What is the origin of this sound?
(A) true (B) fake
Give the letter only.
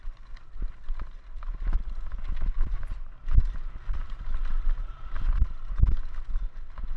A